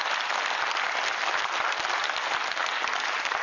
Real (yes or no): yes